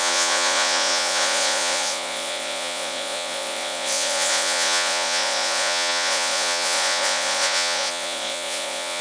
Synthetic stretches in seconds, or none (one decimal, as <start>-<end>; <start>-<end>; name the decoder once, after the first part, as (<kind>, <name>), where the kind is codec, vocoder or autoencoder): 0.0-9.0 (vocoder, Vocos)